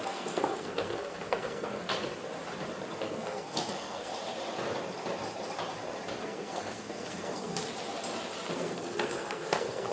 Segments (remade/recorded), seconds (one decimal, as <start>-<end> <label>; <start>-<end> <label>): 0.0-1.9 remade; 1.9-3.0 recorded; 3.0-4.1 remade; 4.1-6.2 recorded; 6.2-7.6 remade; 7.6-8.5 recorded; 8.5-9.9 remade